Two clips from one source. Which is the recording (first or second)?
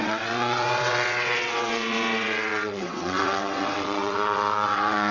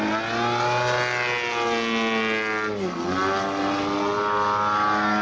second